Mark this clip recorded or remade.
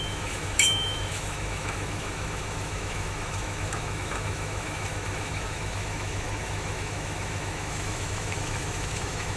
remade